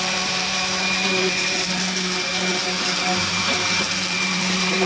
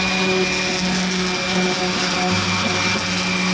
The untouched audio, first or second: second